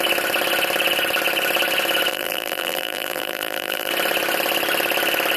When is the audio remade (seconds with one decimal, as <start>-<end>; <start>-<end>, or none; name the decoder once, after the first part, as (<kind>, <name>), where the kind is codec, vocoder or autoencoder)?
2.1-3.9 (vocoder, BigVGAN v2)